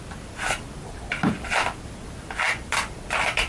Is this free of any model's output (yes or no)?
yes